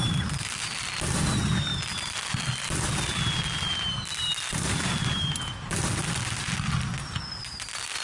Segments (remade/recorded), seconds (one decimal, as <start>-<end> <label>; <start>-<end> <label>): 0.0-8.0 recorded